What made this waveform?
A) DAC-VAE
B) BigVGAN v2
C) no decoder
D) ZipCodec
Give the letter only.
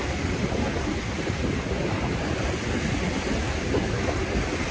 C